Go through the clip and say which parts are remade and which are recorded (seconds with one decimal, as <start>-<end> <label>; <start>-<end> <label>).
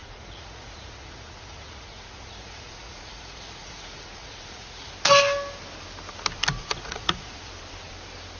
0.0-4.9 remade; 4.9-6.6 recorded; 6.6-7.5 remade; 7.5-8.4 recorded